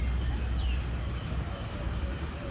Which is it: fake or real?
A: real